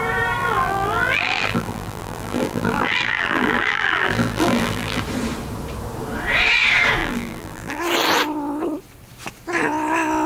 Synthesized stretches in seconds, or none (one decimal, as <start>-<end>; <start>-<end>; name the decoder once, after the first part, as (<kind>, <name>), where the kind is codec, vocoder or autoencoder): 0.4-5.0 (vocoder, BigVGAN v2); 7.0-7.8